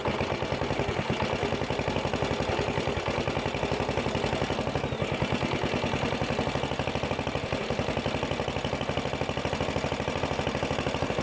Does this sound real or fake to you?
real